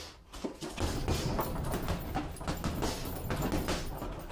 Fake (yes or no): no